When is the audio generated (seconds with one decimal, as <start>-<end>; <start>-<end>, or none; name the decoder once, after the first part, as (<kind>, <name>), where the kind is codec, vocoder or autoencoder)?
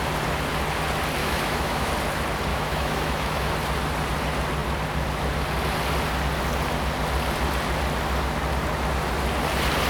1.2-1.9 (autoencoder, DAC-VAE); 2.5-3.5